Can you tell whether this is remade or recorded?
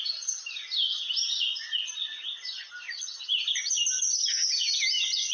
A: recorded